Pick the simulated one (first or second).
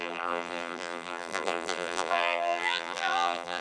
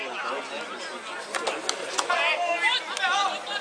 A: first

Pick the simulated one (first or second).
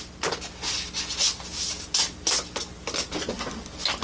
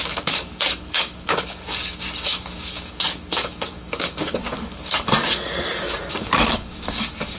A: second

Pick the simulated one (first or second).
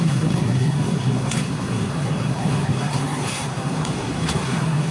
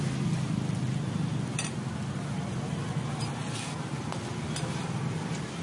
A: first